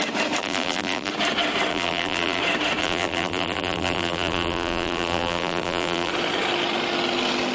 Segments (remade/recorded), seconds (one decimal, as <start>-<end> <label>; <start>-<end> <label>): 0.0-0.4 recorded; 0.4-1.1 remade; 1.1-1.7 recorded; 1.7-2.4 remade; 2.4-2.8 recorded; 2.8-6.1 remade; 6.1-7.5 recorded